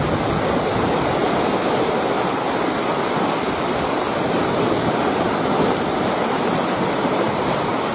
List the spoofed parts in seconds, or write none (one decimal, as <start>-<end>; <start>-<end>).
1.2-5.9